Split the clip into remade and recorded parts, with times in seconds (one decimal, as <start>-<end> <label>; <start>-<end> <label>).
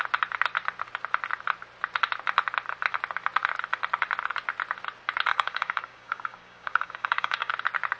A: 0.0-5.3 recorded; 5.3-7.5 remade; 7.5-8.0 recorded